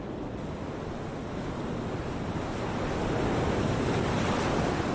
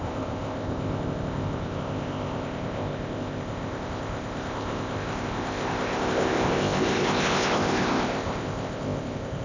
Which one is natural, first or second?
first